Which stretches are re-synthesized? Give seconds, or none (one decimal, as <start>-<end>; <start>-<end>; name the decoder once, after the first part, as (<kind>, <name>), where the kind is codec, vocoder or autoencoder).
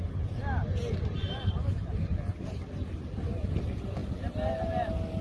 none